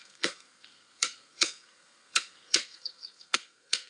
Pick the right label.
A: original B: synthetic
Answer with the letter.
B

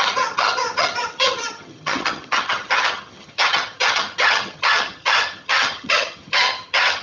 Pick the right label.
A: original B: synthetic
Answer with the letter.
B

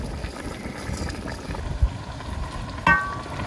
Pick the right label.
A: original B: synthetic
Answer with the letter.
A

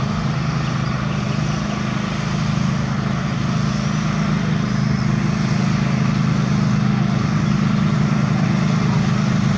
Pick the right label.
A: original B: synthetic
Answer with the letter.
A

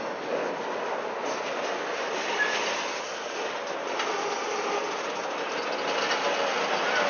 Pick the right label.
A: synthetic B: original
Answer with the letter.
B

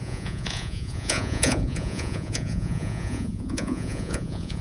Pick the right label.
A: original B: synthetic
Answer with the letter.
B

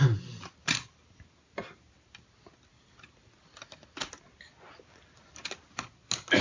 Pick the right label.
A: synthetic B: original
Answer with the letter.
B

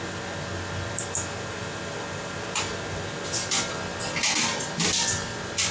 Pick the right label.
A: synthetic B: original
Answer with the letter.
B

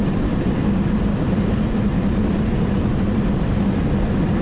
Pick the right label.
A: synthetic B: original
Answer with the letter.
B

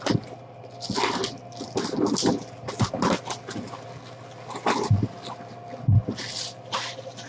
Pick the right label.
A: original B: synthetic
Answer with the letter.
A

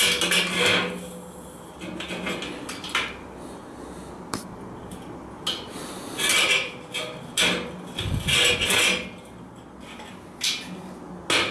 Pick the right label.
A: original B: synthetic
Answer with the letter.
A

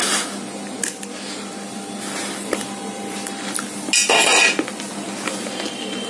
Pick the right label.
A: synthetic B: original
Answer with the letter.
B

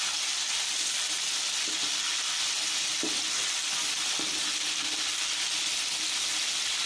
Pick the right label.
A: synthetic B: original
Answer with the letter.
B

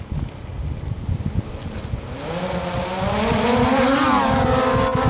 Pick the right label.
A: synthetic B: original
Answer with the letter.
B